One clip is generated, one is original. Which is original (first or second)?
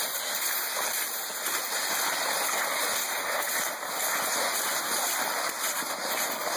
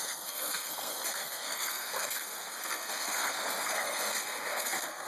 first